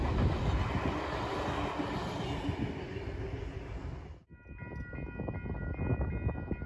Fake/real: real